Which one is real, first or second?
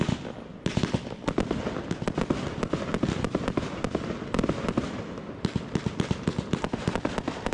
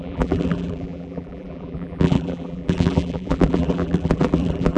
first